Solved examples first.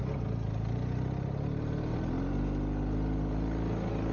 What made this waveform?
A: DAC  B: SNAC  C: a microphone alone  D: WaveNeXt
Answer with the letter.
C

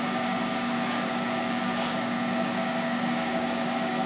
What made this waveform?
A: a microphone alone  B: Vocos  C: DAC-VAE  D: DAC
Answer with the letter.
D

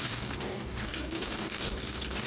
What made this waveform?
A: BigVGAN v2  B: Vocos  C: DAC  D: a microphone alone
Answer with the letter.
C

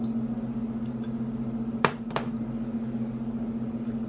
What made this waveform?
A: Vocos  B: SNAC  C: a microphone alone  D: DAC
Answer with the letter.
C